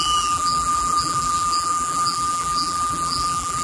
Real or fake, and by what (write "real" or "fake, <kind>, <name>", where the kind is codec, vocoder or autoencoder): fake, vocoder, BigVGAN v2